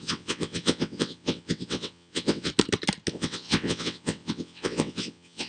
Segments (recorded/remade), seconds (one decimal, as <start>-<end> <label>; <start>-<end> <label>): 0.0-2.5 remade; 2.5-3.1 recorded; 3.1-5.5 remade